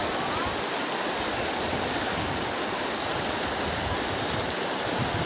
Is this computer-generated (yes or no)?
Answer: no